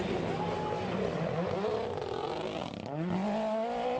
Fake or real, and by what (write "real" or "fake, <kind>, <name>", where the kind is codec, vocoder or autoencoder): real